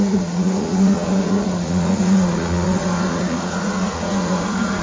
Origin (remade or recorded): remade